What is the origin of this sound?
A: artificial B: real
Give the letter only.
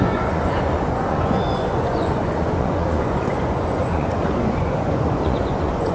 A